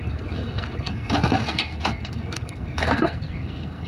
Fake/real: fake